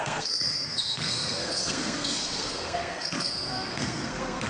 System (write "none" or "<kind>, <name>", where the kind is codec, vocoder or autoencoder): codec, SNAC